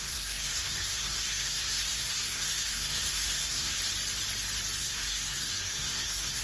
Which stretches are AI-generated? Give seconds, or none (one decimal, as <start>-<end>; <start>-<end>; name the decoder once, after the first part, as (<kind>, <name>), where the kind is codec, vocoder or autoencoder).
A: 0.0-3.8 (codec, SNAC); 4.8-6.4